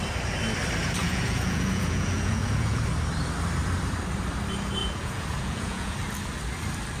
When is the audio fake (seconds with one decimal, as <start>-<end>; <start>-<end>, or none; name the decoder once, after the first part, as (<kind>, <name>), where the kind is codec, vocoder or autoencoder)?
1.0-2.8 (vocoder, Vocos); 4.8-6.0